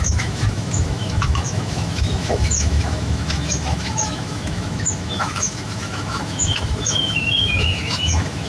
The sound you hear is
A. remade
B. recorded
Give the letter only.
A